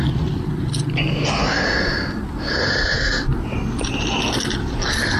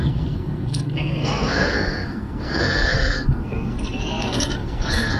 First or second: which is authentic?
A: first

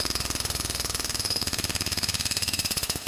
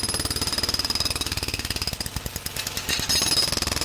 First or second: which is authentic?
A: second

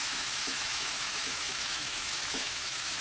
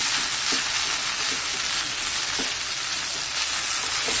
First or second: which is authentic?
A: second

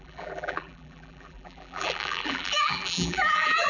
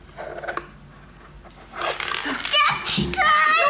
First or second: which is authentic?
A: second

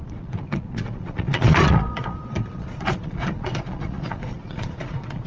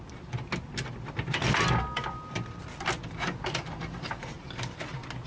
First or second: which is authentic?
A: second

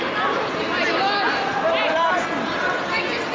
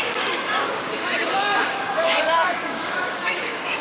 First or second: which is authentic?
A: first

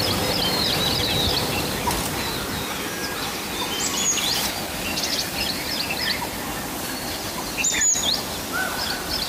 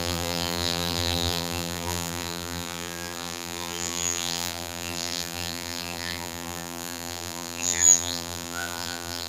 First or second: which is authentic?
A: first